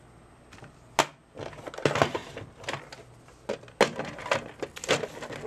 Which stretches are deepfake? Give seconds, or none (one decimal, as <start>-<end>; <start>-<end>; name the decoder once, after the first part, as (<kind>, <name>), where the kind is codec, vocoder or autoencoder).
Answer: 2.2-2.8 (vocoder, BigVGAN v2)